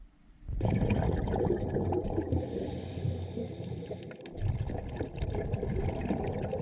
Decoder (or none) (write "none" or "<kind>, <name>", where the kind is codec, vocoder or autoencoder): none